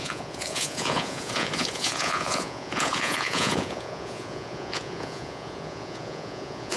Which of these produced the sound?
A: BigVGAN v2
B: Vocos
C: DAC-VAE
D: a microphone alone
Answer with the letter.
B